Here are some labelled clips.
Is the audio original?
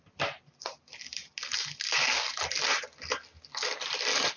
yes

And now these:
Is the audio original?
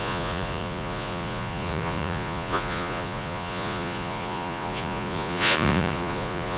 no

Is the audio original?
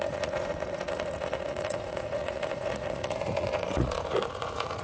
no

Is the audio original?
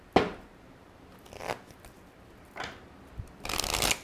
yes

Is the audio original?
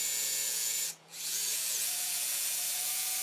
no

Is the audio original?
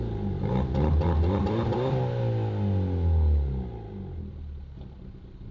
yes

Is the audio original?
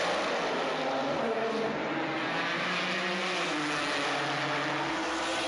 yes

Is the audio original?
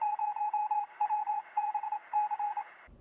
no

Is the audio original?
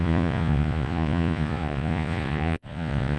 no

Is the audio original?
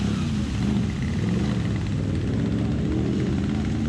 yes